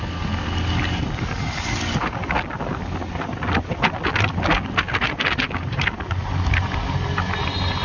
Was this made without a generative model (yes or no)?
yes